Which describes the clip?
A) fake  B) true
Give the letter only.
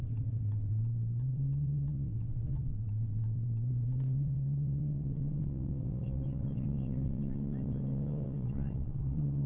A